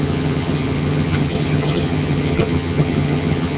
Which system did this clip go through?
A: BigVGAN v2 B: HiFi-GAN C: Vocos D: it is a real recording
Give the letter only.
B